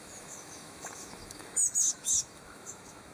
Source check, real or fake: fake